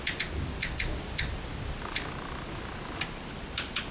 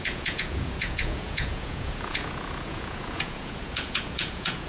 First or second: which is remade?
second